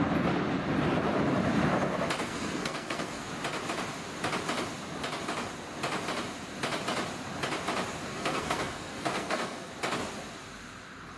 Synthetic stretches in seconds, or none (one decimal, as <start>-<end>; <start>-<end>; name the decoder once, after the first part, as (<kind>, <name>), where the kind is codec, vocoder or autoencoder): 2.2-3.3 (codec, SNAC); 8.1-9.7